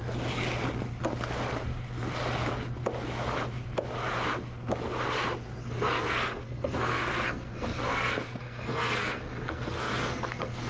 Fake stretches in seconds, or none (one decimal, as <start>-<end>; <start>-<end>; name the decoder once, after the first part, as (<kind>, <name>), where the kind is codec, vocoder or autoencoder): 5.6-10.7 (codec, SNAC)